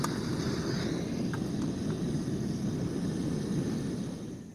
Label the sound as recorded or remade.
recorded